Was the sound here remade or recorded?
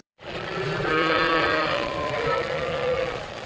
remade